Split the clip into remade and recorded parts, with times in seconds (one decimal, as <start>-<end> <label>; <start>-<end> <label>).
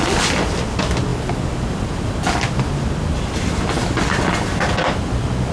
0.0-5.5 recorded